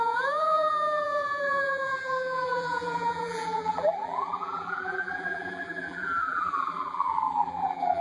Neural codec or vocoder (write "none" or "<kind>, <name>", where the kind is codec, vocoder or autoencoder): vocoder, BigVGAN v2